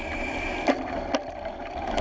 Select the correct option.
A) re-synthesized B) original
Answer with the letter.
A